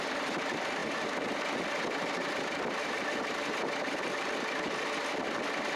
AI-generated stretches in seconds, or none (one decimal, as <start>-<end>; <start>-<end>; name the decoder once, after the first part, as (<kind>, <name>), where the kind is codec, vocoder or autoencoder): none